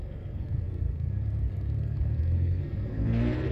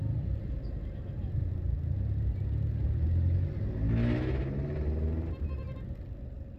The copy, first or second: first